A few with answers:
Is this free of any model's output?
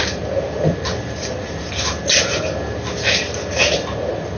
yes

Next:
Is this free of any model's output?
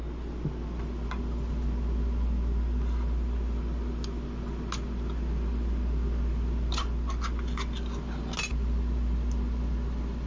yes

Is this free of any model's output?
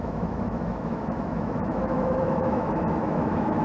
no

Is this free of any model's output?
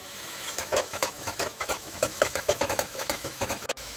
no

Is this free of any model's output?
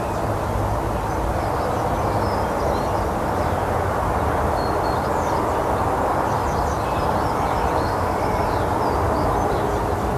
yes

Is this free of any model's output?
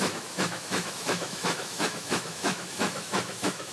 no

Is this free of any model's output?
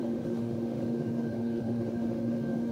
no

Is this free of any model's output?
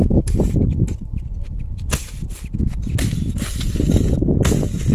yes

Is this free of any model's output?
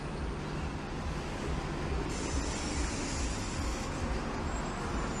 yes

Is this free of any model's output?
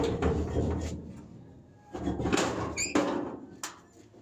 yes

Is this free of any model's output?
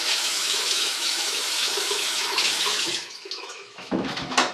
no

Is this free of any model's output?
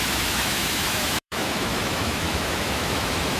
no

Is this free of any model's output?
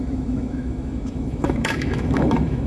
no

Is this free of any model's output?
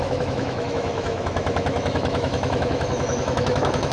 no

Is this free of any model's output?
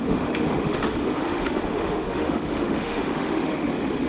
no